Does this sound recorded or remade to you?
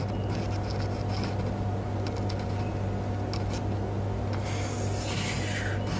recorded